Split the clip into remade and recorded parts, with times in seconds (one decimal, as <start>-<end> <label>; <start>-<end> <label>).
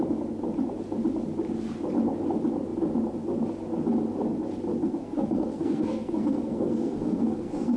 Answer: 0.0-4.8 recorded; 4.8-7.8 remade